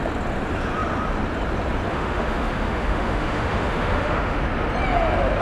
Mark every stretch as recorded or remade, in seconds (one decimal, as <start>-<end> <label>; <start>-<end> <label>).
0.0-1.9 recorded; 1.9-4.4 remade; 4.4-5.4 recorded